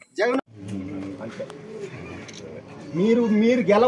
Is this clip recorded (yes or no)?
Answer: yes